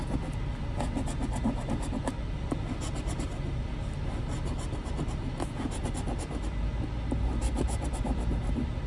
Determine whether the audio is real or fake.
real